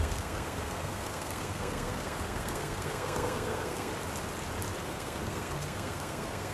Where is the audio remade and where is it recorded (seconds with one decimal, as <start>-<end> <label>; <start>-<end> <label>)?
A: 0.0-3.9 remade; 3.9-4.8 recorded; 4.8-6.5 remade